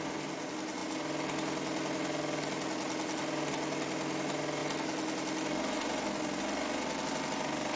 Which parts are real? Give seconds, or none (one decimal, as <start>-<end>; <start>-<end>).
0.0-7.8